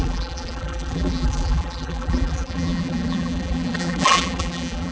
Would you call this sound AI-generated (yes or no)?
yes